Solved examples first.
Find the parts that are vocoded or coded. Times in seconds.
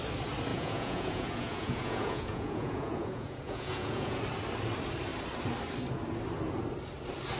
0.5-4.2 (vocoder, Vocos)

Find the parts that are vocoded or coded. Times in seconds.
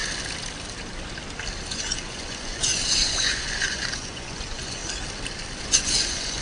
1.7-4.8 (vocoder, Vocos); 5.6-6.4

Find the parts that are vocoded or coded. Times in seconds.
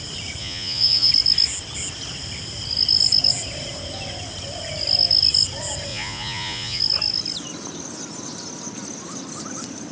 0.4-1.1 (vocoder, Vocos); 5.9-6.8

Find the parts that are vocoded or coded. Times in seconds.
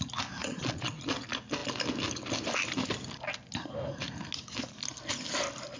0.4-1.0 (vocoder, Vocos)